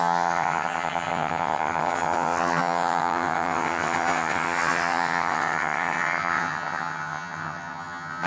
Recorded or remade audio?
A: remade